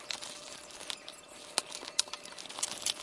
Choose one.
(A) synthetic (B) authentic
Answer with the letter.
B